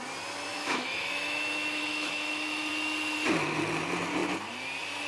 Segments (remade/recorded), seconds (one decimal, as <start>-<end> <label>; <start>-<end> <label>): 0.0-0.5 recorded; 0.5-2.7 remade; 2.7-5.1 recorded